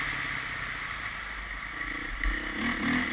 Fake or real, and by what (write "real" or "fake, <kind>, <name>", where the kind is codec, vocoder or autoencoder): real